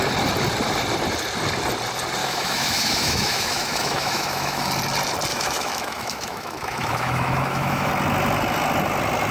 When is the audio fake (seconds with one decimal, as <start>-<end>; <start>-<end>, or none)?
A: 2.2-4.7; 5.3-7.9